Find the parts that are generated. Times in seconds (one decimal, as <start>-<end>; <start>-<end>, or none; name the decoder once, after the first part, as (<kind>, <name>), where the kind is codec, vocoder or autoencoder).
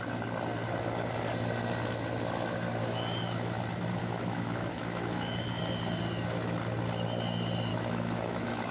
2.8-3.6 (autoencoder, DAC-VAE); 4.0-5.6; 7.7-8.7